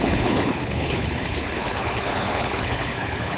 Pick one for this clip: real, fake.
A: fake